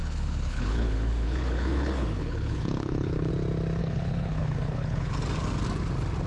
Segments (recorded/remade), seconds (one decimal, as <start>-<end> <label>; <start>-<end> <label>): 0.0-3.3 remade; 3.3-3.8 recorded; 3.8-5.1 remade; 5.1-6.3 recorded